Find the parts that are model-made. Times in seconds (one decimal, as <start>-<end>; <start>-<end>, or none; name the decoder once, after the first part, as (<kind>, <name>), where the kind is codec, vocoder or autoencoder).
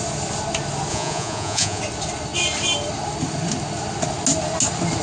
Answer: 0.9-1.8 (vocoder, Vocos)